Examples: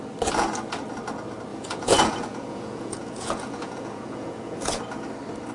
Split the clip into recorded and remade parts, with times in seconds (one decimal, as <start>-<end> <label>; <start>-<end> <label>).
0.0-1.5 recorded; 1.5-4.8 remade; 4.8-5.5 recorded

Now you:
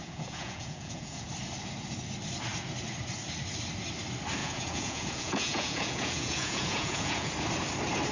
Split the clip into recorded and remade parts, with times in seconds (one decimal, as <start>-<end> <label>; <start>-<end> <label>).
0.0-1.3 remade; 1.3-4.4 recorded; 4.4-7.3 remade; 7.3-8.1 recorded

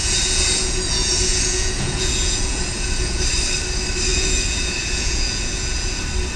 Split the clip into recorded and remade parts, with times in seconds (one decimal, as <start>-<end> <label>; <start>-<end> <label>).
0.0-3.2 remade; 3.2-4.1 recorded; 4.1-6.0 remade; 6.0-6.4 recorded

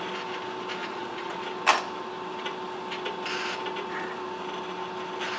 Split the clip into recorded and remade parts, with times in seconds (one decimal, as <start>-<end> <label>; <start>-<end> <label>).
0.0-0.8 recorded; 0.8-1.4 remade; 1.4-5.4 recorded

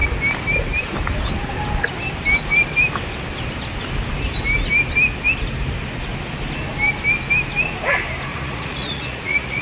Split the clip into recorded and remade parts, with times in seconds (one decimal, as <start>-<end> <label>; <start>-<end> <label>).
0.0-8.3 recorded; 8.3-9.6 remade